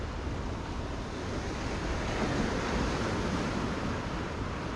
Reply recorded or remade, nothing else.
recorded